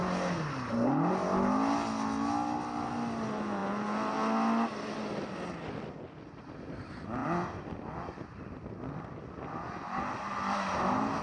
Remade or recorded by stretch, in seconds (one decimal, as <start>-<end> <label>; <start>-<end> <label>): 0.0-11.2 recorded